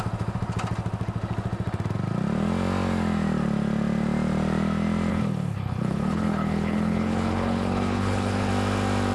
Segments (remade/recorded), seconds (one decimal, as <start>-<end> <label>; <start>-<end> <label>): 0.0-5.1 recorded; 5.1-8.5 remade; 8.5-9.1 recorded

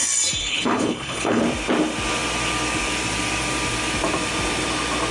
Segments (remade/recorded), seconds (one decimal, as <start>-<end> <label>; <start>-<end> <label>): 0.0-0.4 recorded; 0.4-1.4 remade; 1.4-5.1 recorded

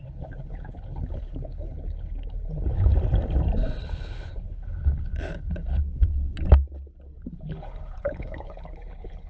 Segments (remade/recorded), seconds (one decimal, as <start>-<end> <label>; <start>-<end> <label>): 0.0-2.9 remade; 2.9-3.8 recorded; 3.8-6.1 remade; 6.1-7.3 recorded; 7.3-9.3 remade

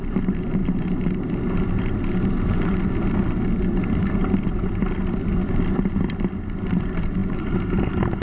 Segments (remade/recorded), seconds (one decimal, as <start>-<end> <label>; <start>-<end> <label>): 0.0-8.2 recorded

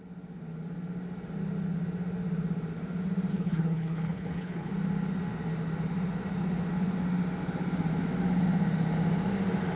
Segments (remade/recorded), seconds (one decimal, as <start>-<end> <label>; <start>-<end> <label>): 0.0-3.3 recorded; 3.3-4.7 remade; 4.7-9.8 recorded

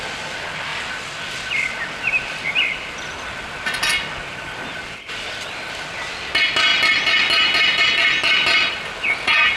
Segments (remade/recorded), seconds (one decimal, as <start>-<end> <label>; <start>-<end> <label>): 0.0-9.6 recorded

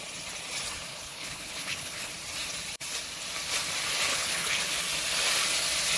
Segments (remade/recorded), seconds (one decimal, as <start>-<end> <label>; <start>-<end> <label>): 0.0-0.9 recorded; 0.9-2.1 remade; 2.1-4.1 recorded; 4.1-4.6 remade; 4.6-6.0 recorded